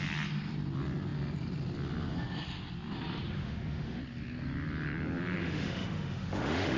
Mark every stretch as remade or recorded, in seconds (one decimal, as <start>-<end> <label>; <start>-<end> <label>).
0.0-3.4 recorded; 3.4-4.0 remade; 4.0-5.4 recorded; 5.4-6.8 remade